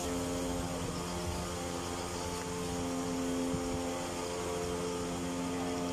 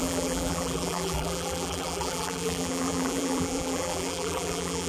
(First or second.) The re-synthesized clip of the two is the second